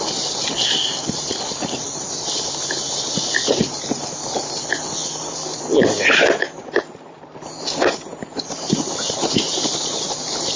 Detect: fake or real real